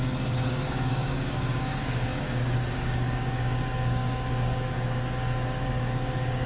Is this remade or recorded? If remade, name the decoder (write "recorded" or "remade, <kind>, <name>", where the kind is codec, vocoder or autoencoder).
remade, codec, DAC